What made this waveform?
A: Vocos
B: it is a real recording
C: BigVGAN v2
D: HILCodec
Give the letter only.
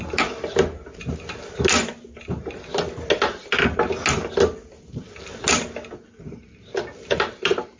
B